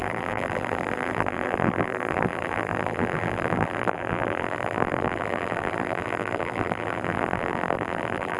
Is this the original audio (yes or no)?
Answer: no